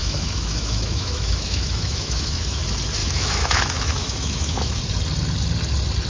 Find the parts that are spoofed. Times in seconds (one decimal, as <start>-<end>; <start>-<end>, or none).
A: 0.0-2.6; 3.0-4.8